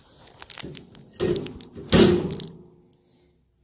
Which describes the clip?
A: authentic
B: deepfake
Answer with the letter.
A